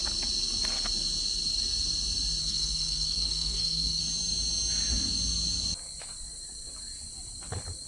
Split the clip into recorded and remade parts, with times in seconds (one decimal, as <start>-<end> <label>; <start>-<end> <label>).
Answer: 0.0-2.4 recorded; 2.4-4.0 remade; 4.0-7.9 recorded